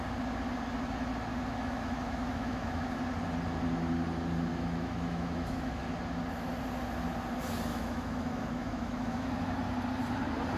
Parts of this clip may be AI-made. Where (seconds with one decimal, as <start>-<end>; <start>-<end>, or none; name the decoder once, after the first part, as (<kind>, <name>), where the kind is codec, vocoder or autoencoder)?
1.3-3.0 (autoencoder, DAC-VAE); 4.5-5.8; 7.7-9.3